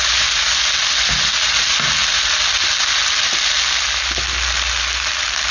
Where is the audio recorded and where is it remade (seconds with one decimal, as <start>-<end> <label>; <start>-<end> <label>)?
0.0-5.5 recorded